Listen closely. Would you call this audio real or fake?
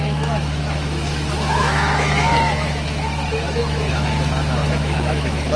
fake